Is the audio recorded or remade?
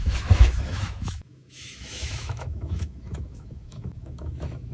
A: remade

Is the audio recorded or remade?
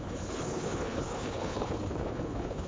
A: remade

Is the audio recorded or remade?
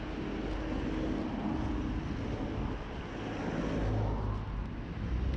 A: recorded